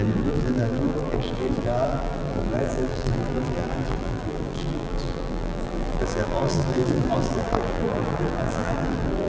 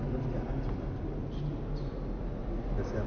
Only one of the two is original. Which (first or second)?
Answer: second